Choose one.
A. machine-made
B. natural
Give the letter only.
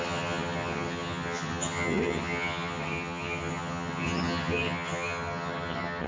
A